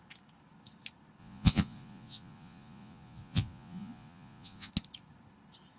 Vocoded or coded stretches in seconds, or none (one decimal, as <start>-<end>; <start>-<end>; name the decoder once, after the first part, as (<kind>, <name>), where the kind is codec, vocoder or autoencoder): 1.2-4.7 (vocoder, Vocos)